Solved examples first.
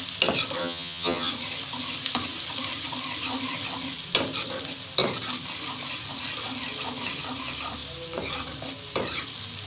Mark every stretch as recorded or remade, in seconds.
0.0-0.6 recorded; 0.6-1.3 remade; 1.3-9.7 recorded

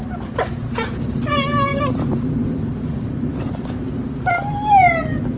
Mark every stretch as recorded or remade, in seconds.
0.0-1.7 remade; 1.7-2.8 recorded; 2.8-3.3 remade; 3.3-4.2 recorded; 4.2-5.4 remade

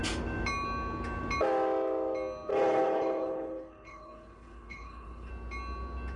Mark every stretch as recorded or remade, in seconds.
0.0-2.5 recorded; 2.5-5.3 remade; 5.3-6.2 recorded

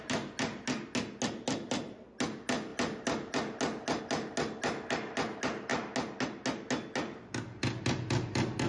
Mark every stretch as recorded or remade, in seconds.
0.0-8.7 recorded

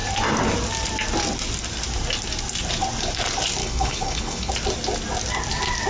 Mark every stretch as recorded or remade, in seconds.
0.0-3.6 recorded; 3.6-4.5 remade; 4.5-5.9 recorded

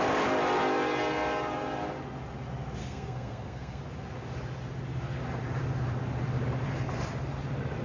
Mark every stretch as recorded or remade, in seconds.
0.0-2.8 recorded; 2.8-3.8 remade; 3.8-7.8 recorded